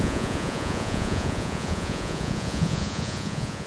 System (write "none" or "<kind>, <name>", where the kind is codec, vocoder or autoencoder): vocoder, Vocos